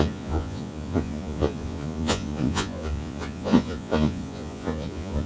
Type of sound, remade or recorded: remade